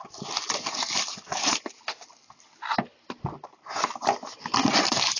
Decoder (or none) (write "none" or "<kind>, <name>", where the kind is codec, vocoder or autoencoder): none